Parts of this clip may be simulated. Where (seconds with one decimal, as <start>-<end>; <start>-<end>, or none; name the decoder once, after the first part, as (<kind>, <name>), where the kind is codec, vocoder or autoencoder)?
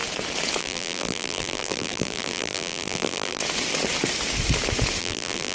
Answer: 0.6-3.4 (vocoder, BigVGAN v2); 5.0-5.5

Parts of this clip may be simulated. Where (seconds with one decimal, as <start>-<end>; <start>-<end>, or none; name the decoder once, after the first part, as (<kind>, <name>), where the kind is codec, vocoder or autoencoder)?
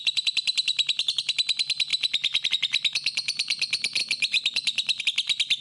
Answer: 0.7-1.3 (vocoder, BigVGAN v2); 4.0-5.0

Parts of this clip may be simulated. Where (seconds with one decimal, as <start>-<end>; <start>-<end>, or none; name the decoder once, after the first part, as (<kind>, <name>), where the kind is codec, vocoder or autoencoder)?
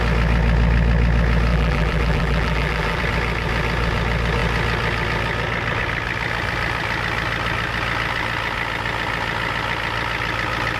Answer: 1.5-3.0 (vocoder, BigVGAN v2)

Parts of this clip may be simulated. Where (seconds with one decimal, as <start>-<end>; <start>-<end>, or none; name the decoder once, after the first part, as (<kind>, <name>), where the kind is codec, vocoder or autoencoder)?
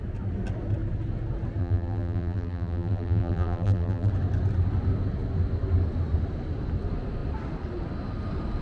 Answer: 1.6-4.1 (vocoder, BigVGAN v2)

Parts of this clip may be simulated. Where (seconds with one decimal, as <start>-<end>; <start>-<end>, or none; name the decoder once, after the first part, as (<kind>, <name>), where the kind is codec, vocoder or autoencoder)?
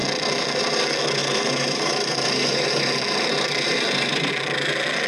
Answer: 1.2-4.3 (vocoder, BigVGAN v2)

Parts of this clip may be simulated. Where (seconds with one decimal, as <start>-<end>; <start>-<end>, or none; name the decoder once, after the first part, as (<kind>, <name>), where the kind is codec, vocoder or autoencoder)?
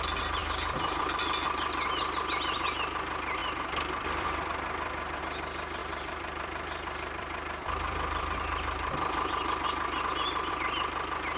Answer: 3.4-5.2 (vocoder, BigVGAN v2); 5.8-10.5